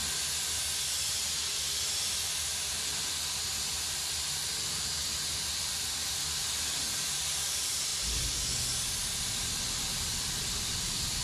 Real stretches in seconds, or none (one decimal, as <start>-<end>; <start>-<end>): 0.0-2.6; 7.9-9.3